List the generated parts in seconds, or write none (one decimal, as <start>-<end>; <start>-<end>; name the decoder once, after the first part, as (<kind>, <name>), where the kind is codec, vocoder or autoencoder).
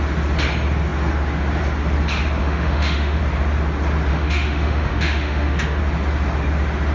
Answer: 2.4-3.2 (autoencoder, DAC-VAE); 4.1-5.8